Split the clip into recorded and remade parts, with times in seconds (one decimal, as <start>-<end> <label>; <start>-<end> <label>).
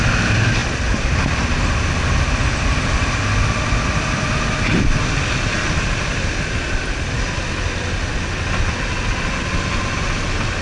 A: 0.0-10.6 recorded